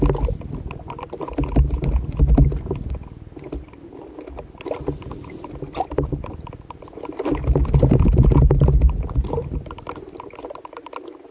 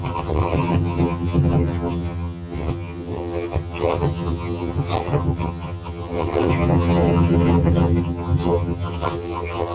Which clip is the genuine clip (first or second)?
first